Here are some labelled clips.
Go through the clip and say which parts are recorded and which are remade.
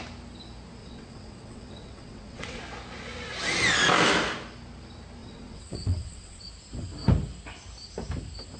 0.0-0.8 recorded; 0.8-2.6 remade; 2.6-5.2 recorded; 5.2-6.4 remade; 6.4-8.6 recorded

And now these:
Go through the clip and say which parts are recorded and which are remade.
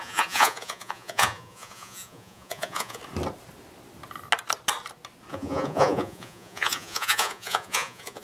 0.0-3.0 remade; 3.0-5.3 recorded; 5.3-8.2 remade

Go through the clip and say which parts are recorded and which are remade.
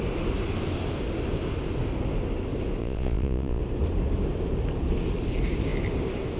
0.0-2.8 recorded; 2.8-3.6 remade; 3.6-6.4 recorded